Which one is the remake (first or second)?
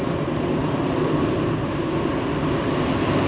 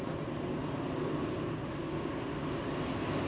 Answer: first